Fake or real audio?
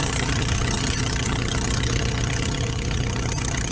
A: fake